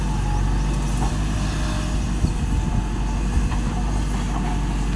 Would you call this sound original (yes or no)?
yes